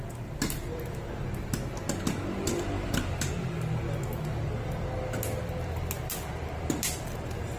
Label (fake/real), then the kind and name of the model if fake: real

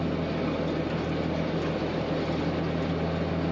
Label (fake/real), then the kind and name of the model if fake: real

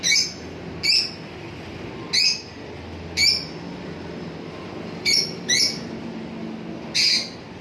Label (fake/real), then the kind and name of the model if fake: real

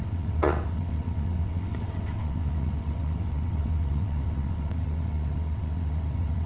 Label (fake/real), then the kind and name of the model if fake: fake, vocoder, WaveNeXt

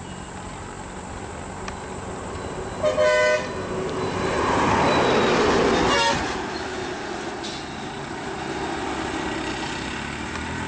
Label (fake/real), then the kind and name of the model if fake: real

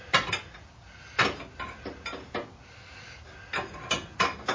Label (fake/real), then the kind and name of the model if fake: real